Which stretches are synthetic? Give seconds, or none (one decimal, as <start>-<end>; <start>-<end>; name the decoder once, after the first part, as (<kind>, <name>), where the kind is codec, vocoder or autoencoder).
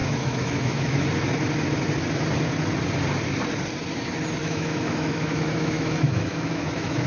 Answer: 0.0-1.0 (autoencoder, DAC-VAE); 4.4-7.1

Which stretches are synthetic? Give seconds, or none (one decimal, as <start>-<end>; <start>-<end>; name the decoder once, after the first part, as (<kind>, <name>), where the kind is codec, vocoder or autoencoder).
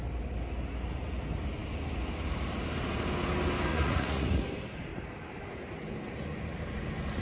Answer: 3.7-4.4 (vocoder, Vocos)